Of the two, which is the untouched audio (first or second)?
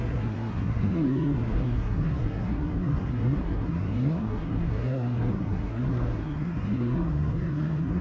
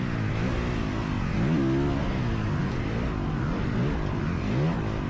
second